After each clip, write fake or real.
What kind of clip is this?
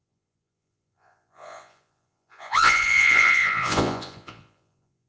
fake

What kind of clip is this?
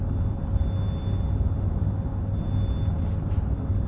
real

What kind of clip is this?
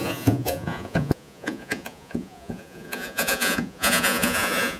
fake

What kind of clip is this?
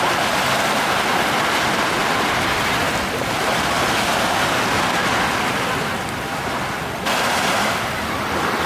real